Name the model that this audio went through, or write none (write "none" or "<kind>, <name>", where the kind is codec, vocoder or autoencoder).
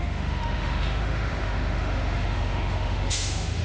autoencoder, DAC-VAE